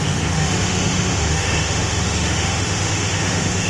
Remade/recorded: remade